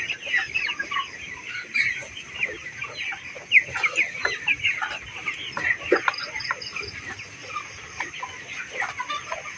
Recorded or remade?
remade